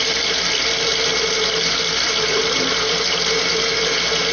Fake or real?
real